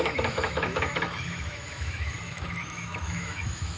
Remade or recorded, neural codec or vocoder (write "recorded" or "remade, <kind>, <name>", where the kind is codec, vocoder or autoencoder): remade, autoencoder, DAC-VAE